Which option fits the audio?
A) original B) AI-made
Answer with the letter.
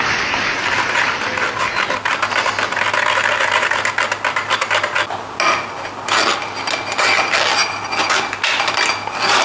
A